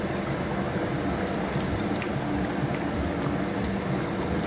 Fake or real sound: real